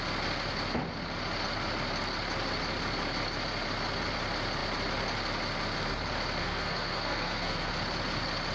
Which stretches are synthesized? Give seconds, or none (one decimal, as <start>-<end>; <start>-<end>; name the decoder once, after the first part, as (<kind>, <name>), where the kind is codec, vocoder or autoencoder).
6.4-7.7 (codec, SNAC)